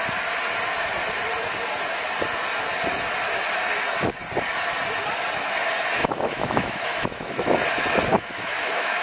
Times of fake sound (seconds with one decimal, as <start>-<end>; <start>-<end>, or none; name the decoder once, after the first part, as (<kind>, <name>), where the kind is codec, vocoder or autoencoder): 6.0-7.6 (autoencoder, DAC-VAE); 8.1-9.0